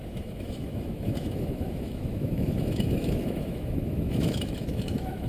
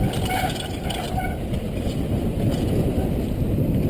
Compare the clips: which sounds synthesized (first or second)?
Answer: first